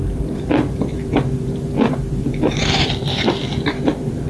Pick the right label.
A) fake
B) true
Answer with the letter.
A